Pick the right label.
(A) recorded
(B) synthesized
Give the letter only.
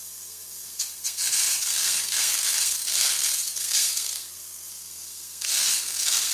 B